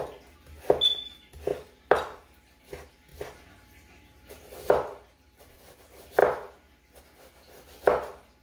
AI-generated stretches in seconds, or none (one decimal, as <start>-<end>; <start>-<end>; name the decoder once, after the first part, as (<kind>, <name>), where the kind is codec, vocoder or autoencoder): 1.5-2.6 (vocoder, BigVGAN v2)